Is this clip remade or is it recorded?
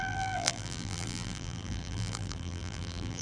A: remade